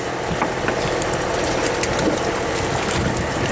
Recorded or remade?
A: recorded